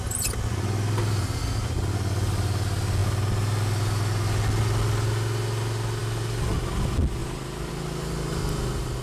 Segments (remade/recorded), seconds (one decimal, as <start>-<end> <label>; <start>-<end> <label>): 0.0-7.2 recorded; 7.2-7.7 remade; 7.7-9.0 recorded